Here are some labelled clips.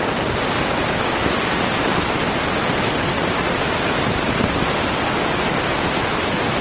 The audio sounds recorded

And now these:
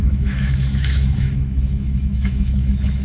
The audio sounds remade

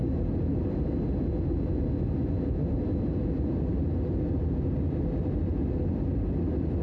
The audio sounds recorded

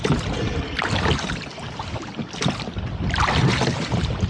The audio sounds recorded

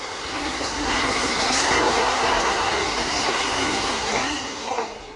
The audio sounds remade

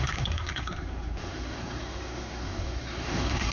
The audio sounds remade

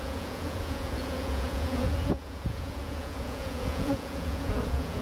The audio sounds remade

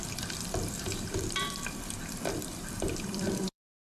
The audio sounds remade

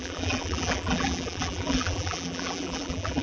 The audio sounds remade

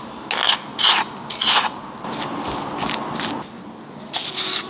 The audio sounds recorded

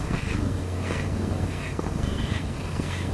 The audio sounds remade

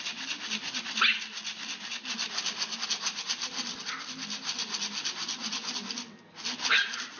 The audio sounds recorded